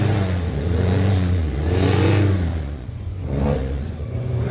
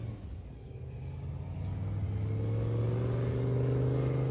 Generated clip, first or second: first